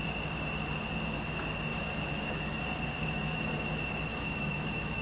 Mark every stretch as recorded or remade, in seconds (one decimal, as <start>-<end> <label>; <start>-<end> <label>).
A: 0.0-1.7 recorded; 1.7-2.6 remade; 2.6-3.0 recorded; 3.0-3.5 remade; 3.5-4.1 recorded; 4.1-5.0 remade